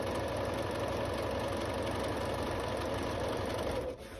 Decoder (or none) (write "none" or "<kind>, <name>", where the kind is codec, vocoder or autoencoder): none